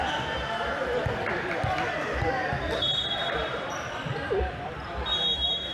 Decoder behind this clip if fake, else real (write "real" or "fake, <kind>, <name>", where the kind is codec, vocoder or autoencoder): fake, vocoder, BigVGAN v2